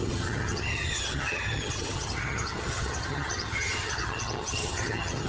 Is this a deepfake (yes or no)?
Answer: yes